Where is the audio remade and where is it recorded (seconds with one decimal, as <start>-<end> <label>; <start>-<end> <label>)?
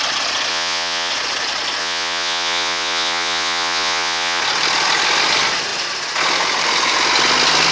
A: 0.0-0.5 recorded; 0.5-1.1 remade; 1.1-1.8 recorded; 1.8-4.4 remade; 4.4-7.7 recorded